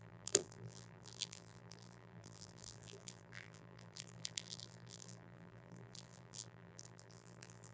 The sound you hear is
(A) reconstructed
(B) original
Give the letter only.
A